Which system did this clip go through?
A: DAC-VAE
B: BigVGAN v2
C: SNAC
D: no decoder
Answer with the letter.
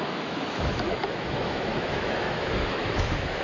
A